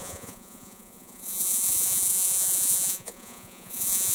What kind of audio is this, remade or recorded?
remade